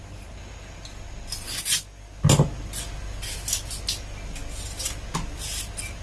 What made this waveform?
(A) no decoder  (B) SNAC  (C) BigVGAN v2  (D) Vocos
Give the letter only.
A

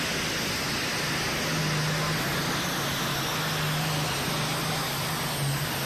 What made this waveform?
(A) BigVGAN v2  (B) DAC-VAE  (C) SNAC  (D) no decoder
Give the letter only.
D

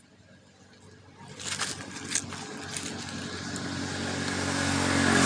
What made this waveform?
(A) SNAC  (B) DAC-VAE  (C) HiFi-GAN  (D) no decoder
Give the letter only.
D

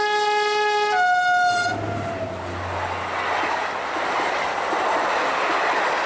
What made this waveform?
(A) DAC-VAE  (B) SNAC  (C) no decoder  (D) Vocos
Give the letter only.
C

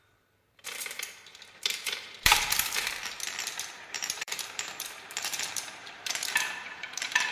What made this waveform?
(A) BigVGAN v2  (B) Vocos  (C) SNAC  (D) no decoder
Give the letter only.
A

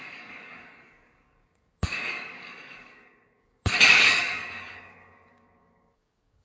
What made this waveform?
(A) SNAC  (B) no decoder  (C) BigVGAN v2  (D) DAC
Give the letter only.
D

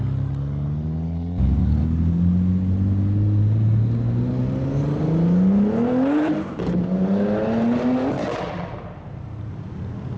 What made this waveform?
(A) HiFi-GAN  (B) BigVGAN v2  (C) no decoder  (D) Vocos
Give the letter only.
C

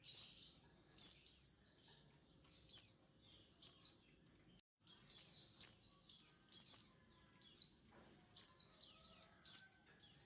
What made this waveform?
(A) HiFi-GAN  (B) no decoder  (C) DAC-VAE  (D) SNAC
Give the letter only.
B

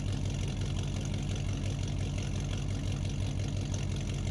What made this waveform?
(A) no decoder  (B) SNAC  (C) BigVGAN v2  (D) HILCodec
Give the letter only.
A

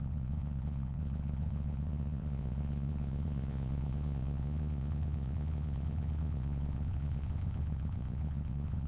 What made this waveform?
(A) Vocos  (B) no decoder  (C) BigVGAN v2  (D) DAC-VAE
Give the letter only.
A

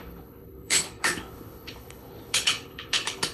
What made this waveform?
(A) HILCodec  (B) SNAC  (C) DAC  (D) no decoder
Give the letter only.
A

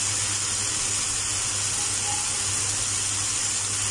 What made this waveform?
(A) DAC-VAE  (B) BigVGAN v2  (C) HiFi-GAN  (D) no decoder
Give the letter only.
D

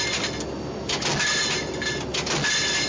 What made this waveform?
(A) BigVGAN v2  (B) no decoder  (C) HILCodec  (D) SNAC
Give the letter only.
B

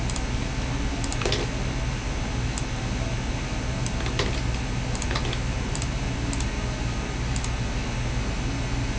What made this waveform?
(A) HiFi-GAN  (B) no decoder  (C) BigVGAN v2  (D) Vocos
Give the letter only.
B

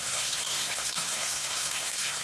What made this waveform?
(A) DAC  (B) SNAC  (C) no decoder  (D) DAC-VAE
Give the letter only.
B